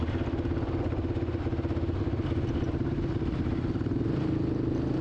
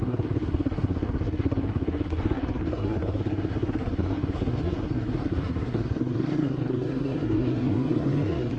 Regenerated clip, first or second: second